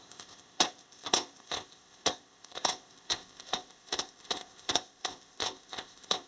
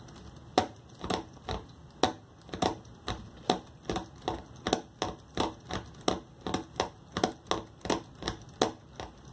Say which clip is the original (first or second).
second